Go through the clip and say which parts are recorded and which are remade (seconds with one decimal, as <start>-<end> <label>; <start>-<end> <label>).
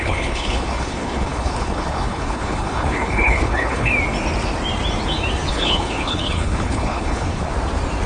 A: 0.0-3.9 remade; 3.9-5.5 recorded; 5.5-7.5 remade; 7.5-8.1 recorded